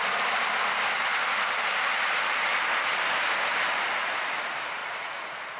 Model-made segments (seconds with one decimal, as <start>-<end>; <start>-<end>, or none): 4.8-5.6